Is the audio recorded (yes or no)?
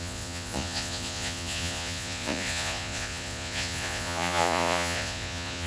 no